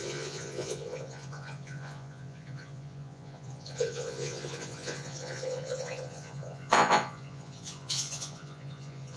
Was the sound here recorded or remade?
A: remade